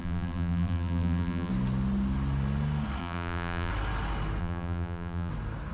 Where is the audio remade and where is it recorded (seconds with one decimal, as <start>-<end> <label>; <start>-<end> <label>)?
0.0-1.5 remade; 1.5-3.0 recorded; 3.0-3.7 remade; 3.7-4.4 recorded; 4.4-5.3 remade; 5.3-5.7 recorded